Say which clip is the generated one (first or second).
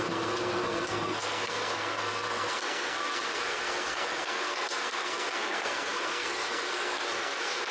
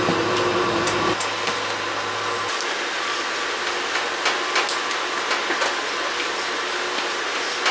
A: first